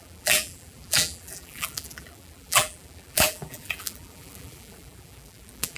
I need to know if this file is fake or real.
fake